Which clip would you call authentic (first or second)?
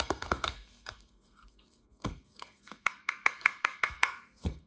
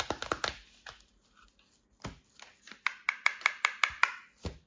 second